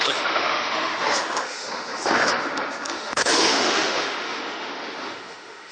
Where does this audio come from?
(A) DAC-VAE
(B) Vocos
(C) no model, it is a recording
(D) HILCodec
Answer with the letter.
A